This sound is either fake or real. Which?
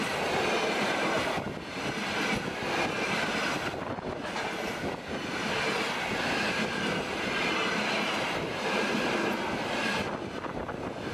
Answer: real